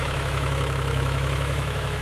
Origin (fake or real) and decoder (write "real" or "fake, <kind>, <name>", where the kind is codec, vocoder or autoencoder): fake, autoencoder, DAC-VAE